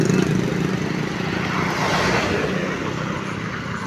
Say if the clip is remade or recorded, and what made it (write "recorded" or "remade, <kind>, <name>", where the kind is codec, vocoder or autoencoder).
recorded